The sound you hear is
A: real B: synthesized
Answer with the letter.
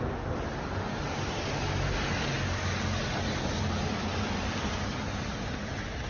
A